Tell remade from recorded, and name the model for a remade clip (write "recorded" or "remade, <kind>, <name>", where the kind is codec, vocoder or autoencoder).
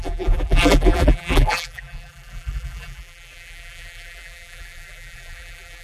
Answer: remade, vocoder, BigVGAN v2